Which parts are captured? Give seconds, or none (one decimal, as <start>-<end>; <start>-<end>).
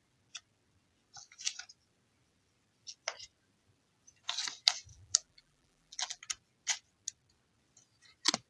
0.0-4.9; 6.2-8.5